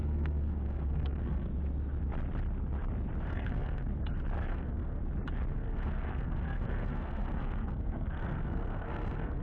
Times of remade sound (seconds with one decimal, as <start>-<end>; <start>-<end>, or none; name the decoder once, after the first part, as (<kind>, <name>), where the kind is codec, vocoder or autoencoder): 0.0-1.5 (codec, SNAC); 3.3-3.9; 4.5-5.0; 5.5-9.4